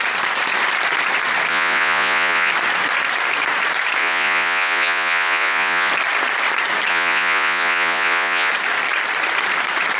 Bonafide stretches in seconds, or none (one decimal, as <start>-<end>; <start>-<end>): 0.0-1.5; 2.5-4.0; 5.9-6.9; 8.5-10.0